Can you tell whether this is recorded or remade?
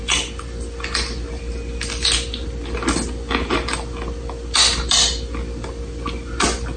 recorded